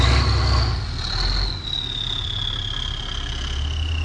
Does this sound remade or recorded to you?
recorded